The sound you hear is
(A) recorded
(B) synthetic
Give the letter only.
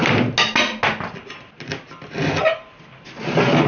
A